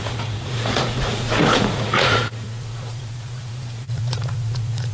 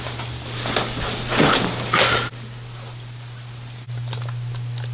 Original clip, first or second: second